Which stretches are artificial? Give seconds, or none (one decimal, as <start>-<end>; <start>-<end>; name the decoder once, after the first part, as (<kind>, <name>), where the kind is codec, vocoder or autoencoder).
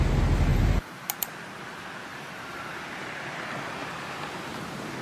0.5-1.1 (vocoder, BigVGAN v2); 2.1-2.8